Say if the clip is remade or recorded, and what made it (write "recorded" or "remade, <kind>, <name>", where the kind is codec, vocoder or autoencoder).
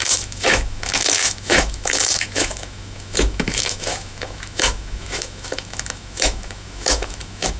remade, autoencoder, DAC-VAE